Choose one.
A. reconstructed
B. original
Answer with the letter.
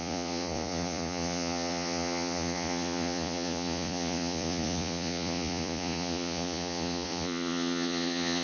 A